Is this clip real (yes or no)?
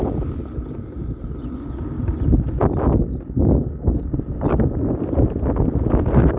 yes